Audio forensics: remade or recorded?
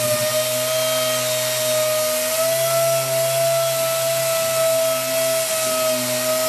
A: recorded